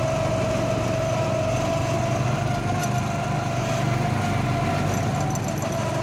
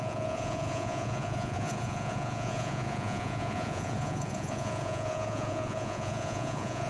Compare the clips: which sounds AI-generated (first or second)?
second